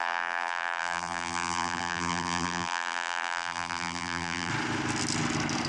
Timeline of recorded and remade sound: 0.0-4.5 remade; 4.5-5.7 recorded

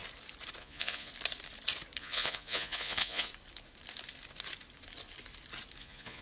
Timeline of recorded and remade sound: 0.0-0.6 recorded; 0.6-1.1 remade; 1.1-2.0 recorded; 2.0-3.3 remade; 3.3-5.8 recorded; 5.8-6.2 remade

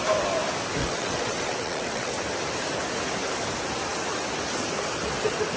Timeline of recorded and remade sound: 0.0-0.8 recorded; 0.8-2.1 remade; 2.1-5.6 recorded

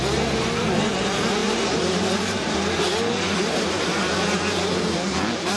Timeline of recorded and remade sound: 0.0-1.4 recorded; 1.4-4.8 remade; 4.8-5.6 recorded

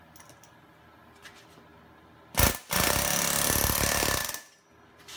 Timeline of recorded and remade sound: 0.0-5.2 recorded

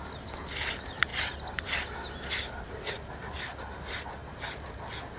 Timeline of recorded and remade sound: 0.0-5.2 recorded